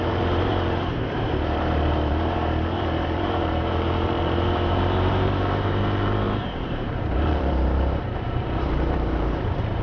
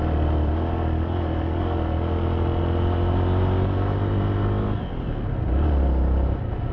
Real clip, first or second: second